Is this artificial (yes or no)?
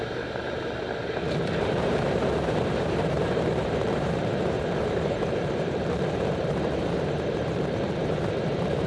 yes